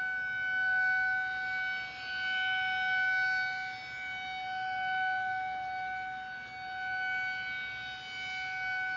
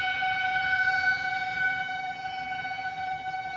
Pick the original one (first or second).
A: first